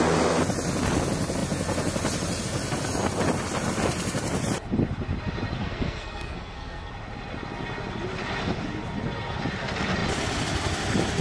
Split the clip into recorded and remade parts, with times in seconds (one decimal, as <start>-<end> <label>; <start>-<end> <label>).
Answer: 0.0-5.6 recorded; 5.6-6.9 remade; 6.9-11.2 recorded